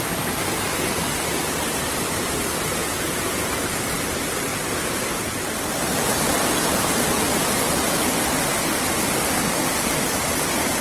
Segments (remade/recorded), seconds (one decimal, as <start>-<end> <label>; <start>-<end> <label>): 0.0-2.8 recorded; 2.8-3.3 remade; 3.3-10.8 recorded

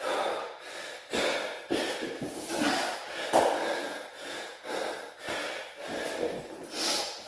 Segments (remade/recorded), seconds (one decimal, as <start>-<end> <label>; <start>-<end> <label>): 0.0-3.8 recorded; 3.8-4.6 remade; 4.6-7.3 recorded

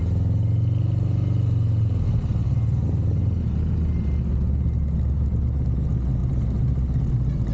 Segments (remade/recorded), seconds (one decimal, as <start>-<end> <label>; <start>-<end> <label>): 0.0-7.5 recorded